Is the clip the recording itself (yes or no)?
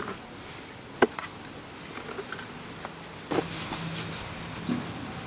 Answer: yes